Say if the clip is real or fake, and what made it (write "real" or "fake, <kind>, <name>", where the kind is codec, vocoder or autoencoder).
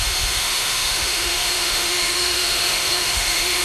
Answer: fake, autoencoder, DAC-VAE